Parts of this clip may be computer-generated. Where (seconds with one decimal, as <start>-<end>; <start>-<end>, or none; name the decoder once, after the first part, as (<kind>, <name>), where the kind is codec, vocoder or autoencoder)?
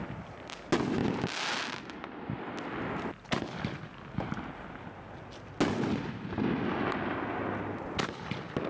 none